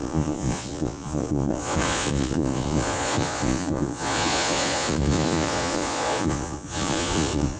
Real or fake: fake